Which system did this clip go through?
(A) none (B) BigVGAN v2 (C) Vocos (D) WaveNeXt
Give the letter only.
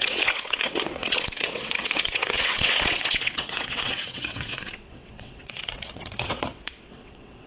D